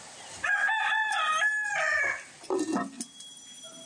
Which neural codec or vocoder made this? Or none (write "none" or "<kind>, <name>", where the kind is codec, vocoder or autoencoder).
none